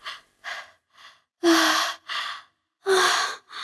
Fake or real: real